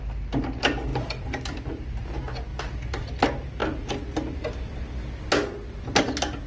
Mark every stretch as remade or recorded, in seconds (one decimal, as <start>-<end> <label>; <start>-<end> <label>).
0.0-6.5 recorded